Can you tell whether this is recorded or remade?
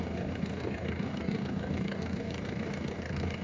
remade